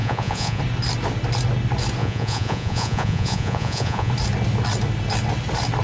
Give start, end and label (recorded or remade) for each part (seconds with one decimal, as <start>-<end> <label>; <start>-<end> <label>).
0.0-0.6 remade; 0.6-2.0 recorded; 2.0-4.1 remade; 4.1-5.8 recorded